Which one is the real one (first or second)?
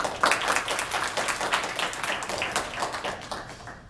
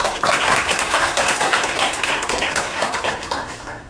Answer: first